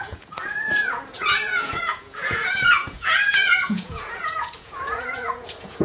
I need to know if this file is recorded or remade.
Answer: remade